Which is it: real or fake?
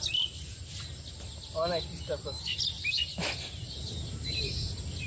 real